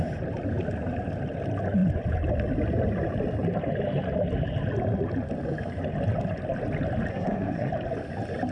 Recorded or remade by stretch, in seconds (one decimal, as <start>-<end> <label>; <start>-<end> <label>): 0.0-7.1 recorded; 7.1-7.7 remade; 7.7-8.5 recorded